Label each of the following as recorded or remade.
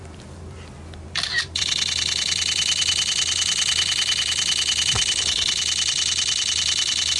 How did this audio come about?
remade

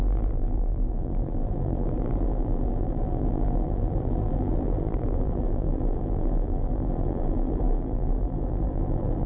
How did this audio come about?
remade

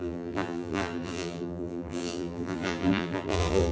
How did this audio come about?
remade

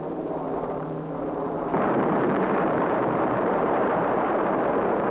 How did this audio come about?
remade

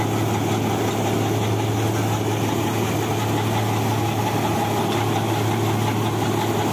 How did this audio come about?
recorded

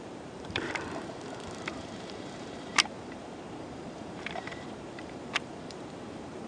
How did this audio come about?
remade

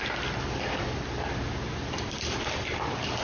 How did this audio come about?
recorded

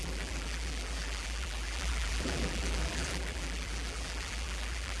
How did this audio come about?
remade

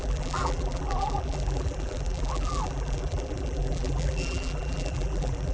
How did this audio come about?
remade